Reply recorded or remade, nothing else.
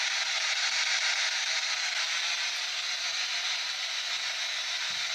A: recorded